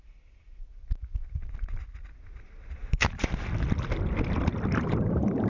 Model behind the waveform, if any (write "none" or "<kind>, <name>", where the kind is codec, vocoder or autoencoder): none